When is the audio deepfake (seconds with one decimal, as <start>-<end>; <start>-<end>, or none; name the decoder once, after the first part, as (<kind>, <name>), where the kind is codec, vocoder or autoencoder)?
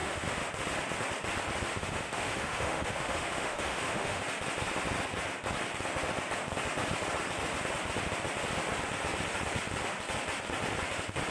0.0-0.5 (autoencoder, DAC-VAE); 1.7-4.2